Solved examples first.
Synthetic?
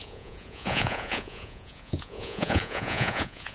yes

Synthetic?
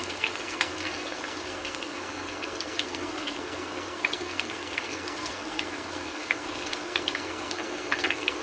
yes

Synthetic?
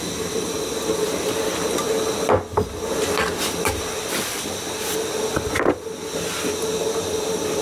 no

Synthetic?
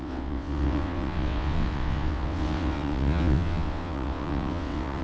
yes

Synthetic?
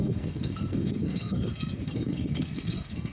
yes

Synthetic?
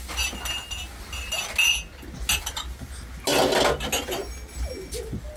no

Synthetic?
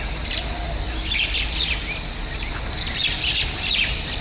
no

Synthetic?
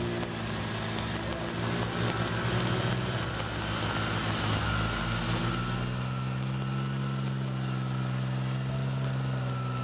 no